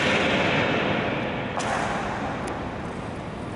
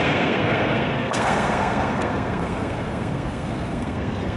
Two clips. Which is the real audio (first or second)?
first